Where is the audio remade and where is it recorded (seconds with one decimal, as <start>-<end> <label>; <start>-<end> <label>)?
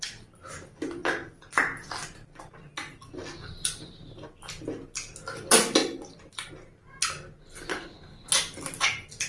0.0-7.7 recorded; 7.7-8.3 remade; 8.3-9.3 recorded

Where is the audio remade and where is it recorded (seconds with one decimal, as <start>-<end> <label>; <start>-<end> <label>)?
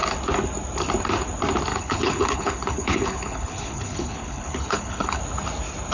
0.0-1.7 recorded; 1.7-5.2 remade; 5.2-5.9 recorded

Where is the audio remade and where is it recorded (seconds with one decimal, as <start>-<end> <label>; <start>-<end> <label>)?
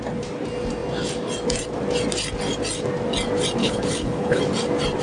0.0-3.6 recorded; 3.6-4.4 remade; 4.4-5.0 recorded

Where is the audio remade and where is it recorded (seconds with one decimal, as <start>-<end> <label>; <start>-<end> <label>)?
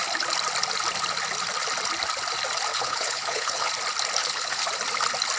0.0-2.7 recorded; 2.7-3.7 remade; 3.7-4.2 recorded; 4.2-4.7 remade; 4.7-5.4 recorded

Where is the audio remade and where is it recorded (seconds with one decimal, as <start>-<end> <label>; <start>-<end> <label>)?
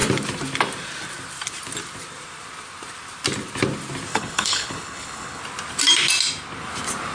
0.0-4.1 recorded; 4.1-5.4 remade; 5.4-7.1 recorded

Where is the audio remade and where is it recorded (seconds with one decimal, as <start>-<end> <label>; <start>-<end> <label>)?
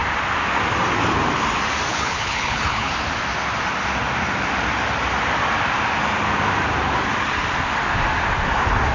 0.0-1.9 recorded; 1.9-2.9 remade; 2.9-8.9 recorded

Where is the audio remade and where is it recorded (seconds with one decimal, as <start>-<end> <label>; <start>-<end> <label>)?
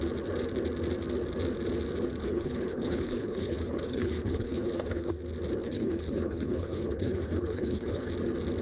0.0-2.2 recorded; 2.2-5.1 remade; 5.1-5.6 recorded; 5.6-8.1 remade; 8.1-8.6 recorded